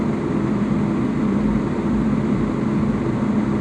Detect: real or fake fake